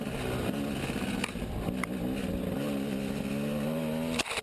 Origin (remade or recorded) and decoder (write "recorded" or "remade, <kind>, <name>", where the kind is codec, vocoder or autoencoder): recorded